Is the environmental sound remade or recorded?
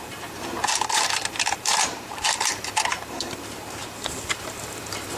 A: remade